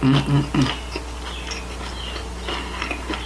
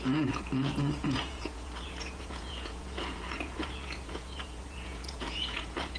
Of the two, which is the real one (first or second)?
first